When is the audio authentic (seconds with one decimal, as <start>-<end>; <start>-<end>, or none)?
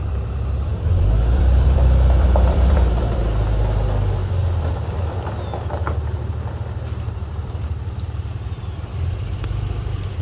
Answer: 3.2-5.0; 5.5-7.1